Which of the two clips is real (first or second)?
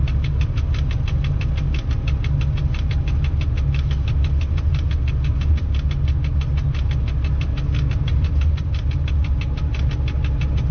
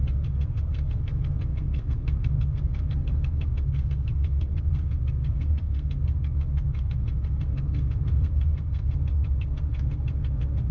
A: first